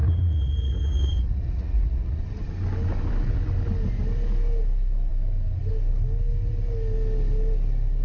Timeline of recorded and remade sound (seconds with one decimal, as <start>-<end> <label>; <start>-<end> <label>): 0.0-2.2 remade; 2.2-8.0 recorded